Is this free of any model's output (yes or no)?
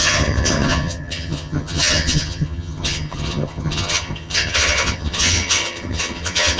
no